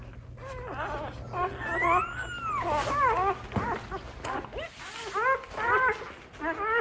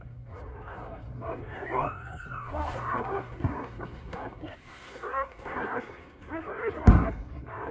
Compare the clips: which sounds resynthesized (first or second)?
second